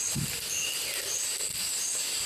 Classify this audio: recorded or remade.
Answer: recorded